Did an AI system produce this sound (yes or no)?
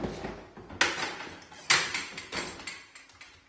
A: no